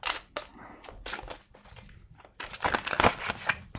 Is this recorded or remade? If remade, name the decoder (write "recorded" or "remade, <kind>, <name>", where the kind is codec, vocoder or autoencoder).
recorded